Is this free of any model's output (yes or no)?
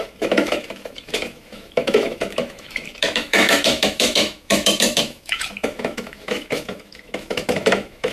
no